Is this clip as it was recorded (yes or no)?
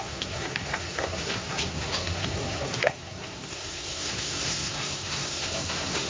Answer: no